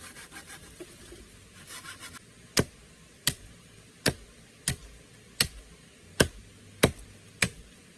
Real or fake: real